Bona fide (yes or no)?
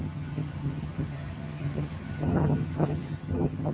no